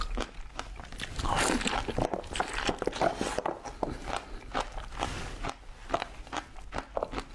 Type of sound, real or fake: real